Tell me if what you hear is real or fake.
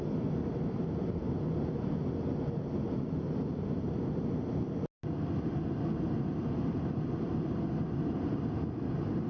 real